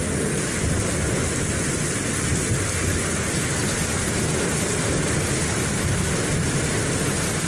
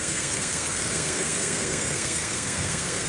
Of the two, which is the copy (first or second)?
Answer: second